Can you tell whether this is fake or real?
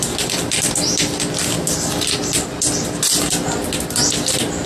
real